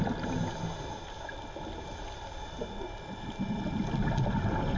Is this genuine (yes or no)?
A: yes